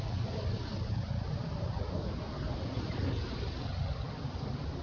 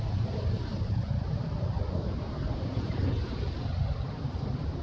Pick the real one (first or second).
first